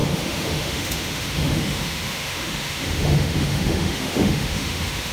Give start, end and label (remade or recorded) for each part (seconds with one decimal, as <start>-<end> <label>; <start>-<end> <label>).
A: 0.0-5.1 remade